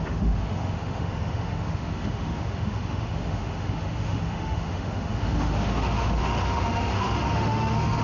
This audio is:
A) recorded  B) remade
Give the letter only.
B